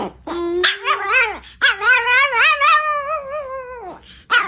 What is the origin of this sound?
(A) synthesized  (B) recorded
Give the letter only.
B